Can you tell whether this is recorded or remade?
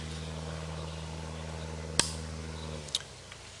recorded